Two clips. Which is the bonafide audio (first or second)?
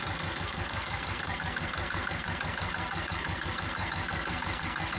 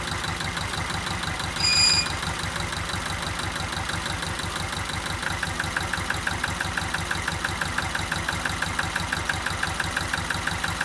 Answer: second